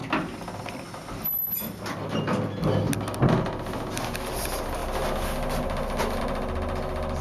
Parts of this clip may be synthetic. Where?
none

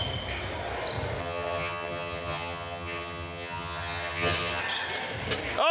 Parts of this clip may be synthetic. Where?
1.2-4.6 (vocoder, HiFi-GAN)

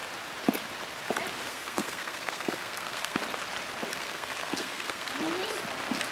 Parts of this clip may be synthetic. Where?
1.5-3.2 (codec, SNAC); 3.9-5.1

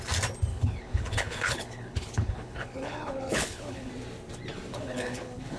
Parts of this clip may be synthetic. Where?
0.5-3.9 (codec, HILCodec); 4.7-5.6

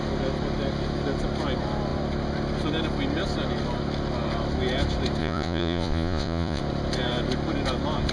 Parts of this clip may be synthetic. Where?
5.2-6.6 (vocoder, Vocos)

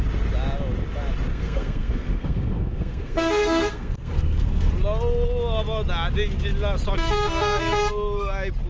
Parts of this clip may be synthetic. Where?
1.3-4.7 (codec, SNAC)